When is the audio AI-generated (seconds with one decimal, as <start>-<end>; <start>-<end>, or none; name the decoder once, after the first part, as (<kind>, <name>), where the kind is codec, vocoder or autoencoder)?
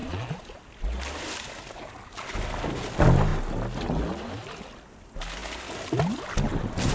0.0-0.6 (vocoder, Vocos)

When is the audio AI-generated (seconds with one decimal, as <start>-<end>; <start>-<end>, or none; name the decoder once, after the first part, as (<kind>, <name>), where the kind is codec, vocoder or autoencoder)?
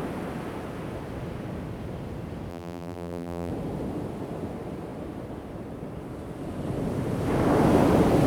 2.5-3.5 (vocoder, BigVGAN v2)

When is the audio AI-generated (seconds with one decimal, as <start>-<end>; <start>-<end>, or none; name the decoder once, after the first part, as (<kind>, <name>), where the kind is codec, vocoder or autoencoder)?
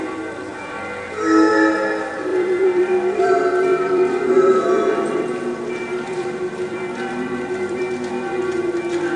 2.3-3.3 (vocoder, BigVGAN v2); 3.7-7.8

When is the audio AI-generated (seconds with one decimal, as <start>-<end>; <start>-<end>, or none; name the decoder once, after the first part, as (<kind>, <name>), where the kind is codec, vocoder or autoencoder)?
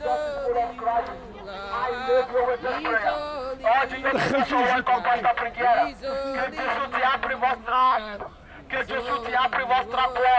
7.6-8.6 (codec, SNAC)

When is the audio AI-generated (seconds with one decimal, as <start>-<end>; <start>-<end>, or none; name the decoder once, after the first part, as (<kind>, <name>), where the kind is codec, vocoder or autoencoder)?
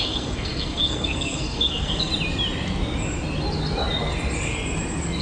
0.0-2.1 (codec, SNAC)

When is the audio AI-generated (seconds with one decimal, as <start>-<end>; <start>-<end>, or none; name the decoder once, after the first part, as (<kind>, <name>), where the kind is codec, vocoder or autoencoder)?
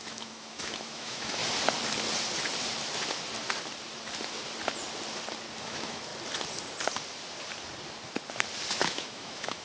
0.0-1.4 (autoencoder, DAC-VAE); 5.6-6.1; 8.7-9.6